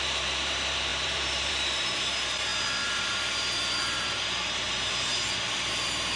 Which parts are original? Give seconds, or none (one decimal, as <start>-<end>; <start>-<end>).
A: 5.1-5.7